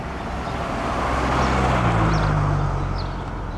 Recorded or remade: recorded